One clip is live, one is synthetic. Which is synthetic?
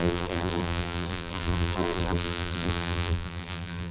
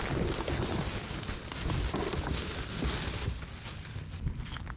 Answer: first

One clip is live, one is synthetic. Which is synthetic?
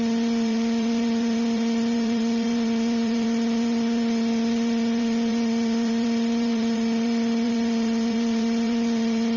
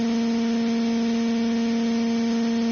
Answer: first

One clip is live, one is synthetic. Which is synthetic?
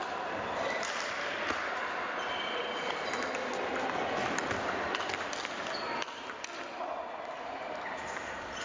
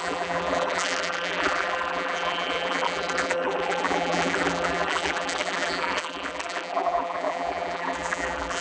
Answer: second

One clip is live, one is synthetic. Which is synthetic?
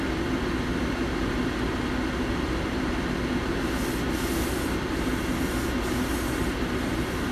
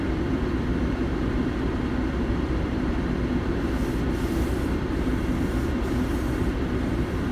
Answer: second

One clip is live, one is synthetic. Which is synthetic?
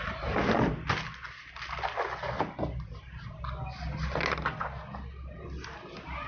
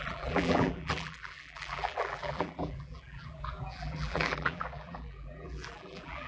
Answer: second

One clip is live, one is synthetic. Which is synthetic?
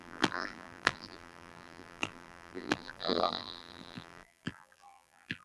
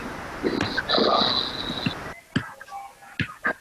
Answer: first